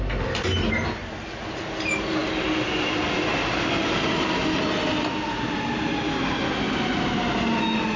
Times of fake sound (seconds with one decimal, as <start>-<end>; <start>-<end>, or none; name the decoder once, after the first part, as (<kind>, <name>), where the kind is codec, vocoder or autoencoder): none